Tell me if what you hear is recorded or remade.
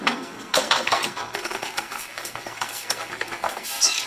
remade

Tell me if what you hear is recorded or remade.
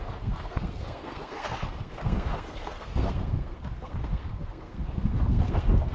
remade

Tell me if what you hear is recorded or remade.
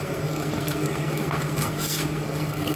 remade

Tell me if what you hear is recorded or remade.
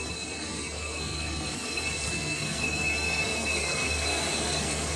remade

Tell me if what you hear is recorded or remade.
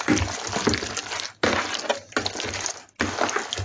recorded